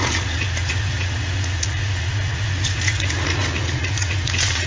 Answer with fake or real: fake